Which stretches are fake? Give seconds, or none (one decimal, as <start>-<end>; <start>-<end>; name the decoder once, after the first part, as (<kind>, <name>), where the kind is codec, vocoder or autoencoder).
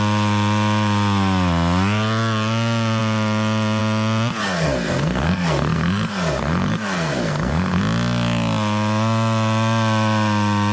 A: 4.4-7.8 (codec, SNAC)